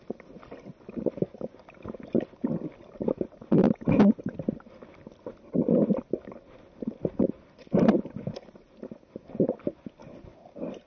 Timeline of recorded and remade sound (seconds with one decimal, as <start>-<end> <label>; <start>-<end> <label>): 0.0-10.9 recorded